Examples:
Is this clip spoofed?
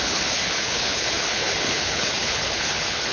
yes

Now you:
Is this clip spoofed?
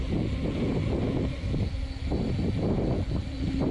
no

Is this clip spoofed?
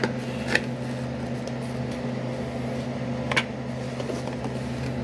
no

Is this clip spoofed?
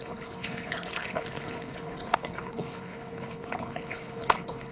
yes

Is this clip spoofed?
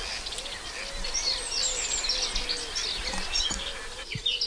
no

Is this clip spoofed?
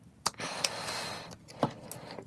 no